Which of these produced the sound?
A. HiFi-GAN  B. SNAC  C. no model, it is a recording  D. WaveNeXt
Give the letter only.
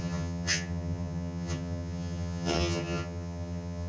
A